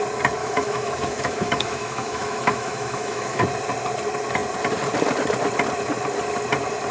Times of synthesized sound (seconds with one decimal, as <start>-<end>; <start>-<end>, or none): 0.4-3.4